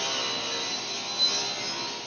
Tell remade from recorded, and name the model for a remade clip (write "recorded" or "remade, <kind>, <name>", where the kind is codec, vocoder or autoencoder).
recorded